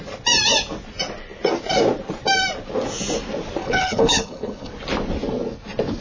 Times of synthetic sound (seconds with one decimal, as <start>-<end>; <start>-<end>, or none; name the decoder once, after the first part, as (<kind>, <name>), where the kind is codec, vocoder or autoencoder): 3.6-4.7 (codec, HILCodec)